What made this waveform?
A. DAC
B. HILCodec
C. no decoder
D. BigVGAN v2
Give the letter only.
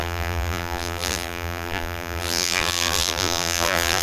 D